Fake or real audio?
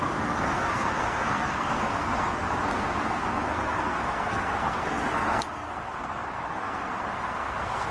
fake